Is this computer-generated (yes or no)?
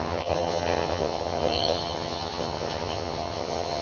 yes